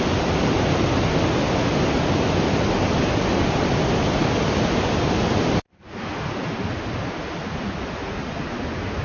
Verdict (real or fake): real